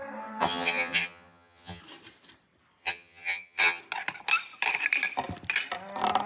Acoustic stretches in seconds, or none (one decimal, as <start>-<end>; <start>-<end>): 0.0-0.4; 1.8-2.8; 3.8-6.3